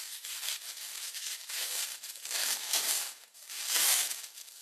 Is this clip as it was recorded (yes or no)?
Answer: no